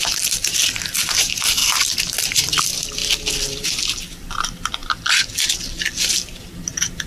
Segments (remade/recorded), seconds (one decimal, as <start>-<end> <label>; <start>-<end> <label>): 0.0-1.6 remade; 1.6-2.2 recorded; 2.2-3.0 remade; 3.0-3.8 recorded; 3.8-4.8 remade; 4.8-7.1 recorded